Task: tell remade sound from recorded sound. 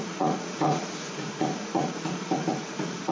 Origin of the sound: remade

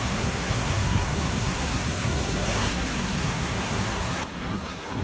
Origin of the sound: remade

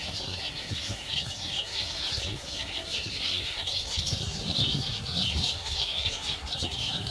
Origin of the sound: remade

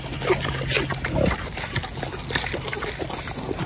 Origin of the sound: recorded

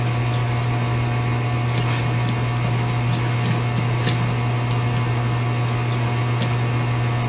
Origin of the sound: recorded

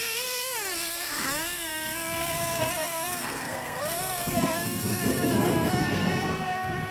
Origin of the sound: remade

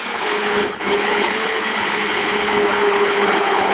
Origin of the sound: remade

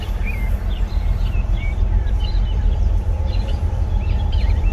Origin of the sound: remade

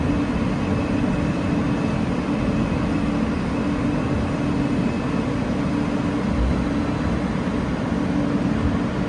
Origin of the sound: recorded